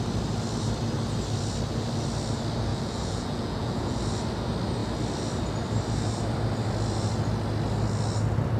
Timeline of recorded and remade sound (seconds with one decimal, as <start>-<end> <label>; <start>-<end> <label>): 0.0-2.7 recorded; 2.7-4.0 remade; 4.0-8.6 recorded